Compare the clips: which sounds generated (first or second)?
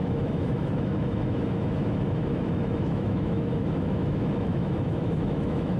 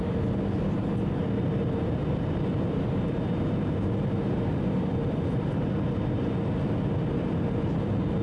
first